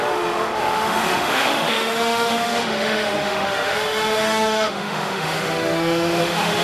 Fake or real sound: fake